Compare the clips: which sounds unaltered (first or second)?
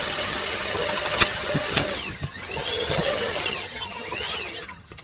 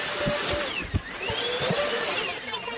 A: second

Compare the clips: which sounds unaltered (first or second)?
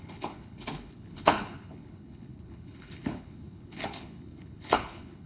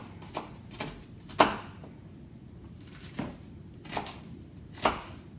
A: second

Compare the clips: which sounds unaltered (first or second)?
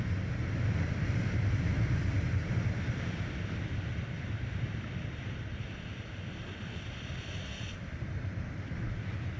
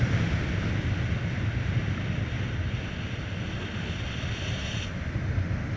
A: second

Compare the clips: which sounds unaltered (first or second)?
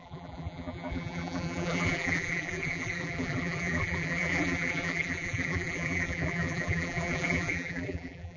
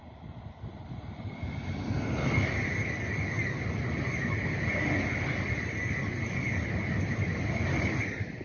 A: second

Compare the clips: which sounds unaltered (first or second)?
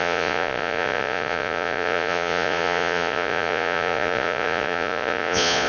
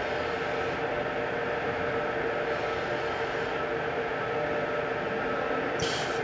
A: second